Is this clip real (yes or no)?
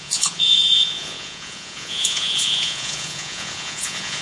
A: no